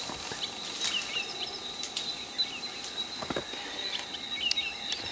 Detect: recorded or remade recorded